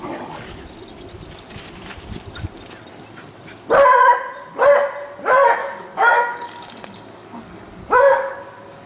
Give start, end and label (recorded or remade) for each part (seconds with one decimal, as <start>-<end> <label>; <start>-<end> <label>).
0.0-5.6 recorded; 5.6-8.9 remade